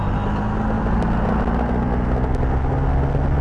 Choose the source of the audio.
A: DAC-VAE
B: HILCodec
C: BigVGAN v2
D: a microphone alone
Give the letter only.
D